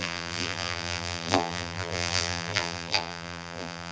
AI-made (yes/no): yes